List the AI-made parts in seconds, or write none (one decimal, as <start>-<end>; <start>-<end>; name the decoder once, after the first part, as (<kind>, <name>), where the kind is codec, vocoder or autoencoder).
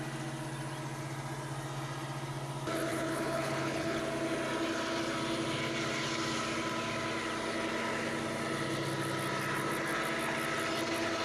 2.9-4.0 (codec, HILCodec)